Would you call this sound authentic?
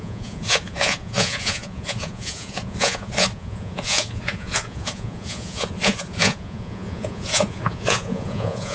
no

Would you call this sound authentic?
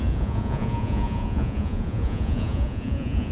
no